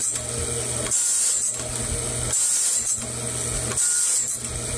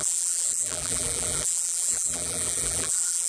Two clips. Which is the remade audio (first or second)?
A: second